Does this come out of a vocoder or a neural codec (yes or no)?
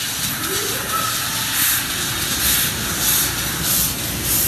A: no